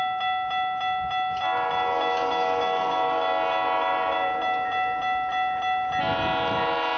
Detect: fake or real real